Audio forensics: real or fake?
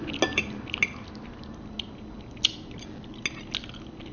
real